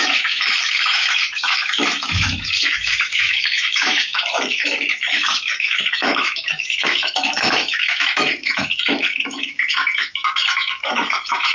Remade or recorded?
remade